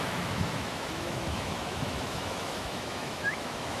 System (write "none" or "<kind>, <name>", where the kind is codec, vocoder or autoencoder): autoencoder, DAC-VAE